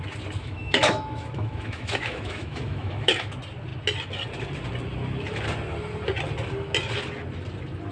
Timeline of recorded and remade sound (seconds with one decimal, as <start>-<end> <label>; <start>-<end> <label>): 0.0-0.4 recorded; 0.4-3.3 remade; 3.3-7.9 recorded